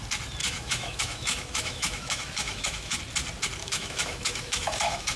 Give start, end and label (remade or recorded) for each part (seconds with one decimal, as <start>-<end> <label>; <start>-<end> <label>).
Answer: 0.0-0.4 recorded; 0.4-3.0 remade; 3.0-3.6 recorded; 3.6-5.2 remade